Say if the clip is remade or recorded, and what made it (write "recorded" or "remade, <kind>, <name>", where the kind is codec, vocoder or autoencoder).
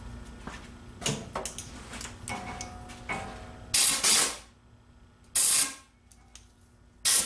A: recorded